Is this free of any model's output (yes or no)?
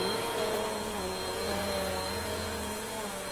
no